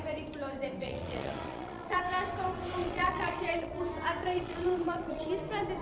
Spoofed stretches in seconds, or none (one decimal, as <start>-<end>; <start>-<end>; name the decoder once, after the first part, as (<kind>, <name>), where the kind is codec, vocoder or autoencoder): 0.8-2.0 (vocoder, Vocos); 2.8-3.8; 4.2-5.3